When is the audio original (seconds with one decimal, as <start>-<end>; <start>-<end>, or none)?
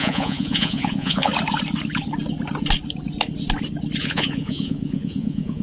1.3-4.0